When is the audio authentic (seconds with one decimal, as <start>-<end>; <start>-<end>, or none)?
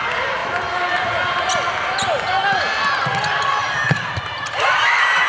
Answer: 0.0-3.6